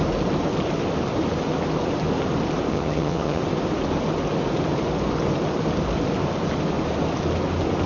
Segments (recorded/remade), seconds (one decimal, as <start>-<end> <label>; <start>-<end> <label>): 0.0-2.7 recorded; 2.7-3.4 remade; 3.4-7.9 recorded